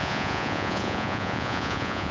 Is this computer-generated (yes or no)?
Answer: yes